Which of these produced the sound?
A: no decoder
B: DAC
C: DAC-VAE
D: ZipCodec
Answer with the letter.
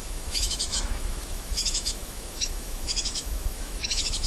C